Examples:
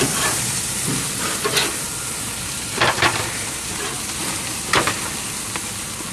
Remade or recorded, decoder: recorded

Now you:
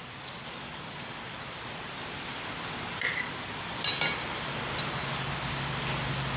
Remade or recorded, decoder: recorded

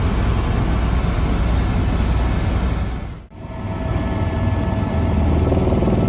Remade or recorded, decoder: recorded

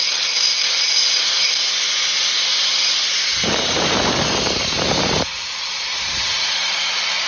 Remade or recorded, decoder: remade, vocoder, BigVGAN v2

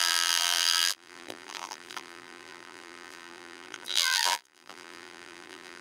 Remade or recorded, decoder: remade, vocoder, BigVGAN v2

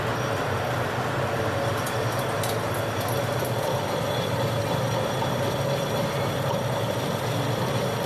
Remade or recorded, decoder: recorded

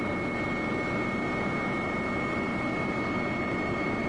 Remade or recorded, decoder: recorded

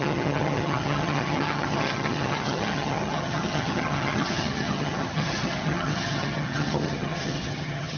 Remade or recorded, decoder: remade, vocoder, HiFi-GAN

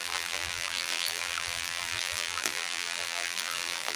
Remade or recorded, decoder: remade, vocoder, BigVGAN v2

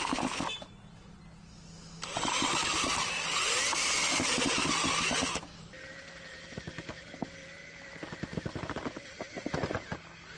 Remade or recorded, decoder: recorded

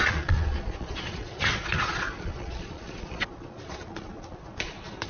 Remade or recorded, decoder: remade, vocoder, Vocos